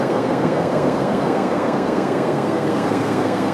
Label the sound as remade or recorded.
remade